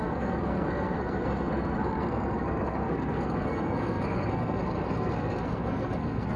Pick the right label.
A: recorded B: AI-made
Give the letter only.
B